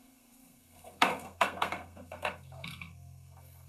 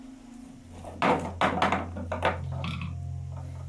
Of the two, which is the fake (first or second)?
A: first